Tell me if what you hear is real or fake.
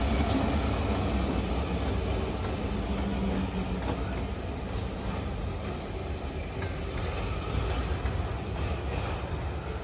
real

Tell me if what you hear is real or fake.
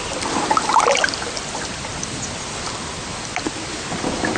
real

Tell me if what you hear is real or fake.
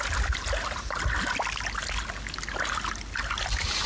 real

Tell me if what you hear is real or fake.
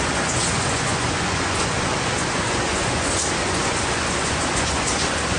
fake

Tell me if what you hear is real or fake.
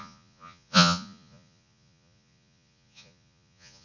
fake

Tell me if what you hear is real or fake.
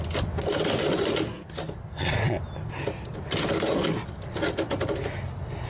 real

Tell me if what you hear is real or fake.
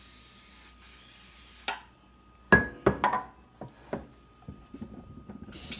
real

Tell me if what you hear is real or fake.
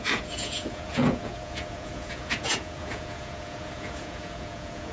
fake